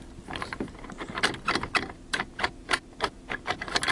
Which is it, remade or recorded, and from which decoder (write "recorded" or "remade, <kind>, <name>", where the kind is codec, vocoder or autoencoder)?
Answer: recorded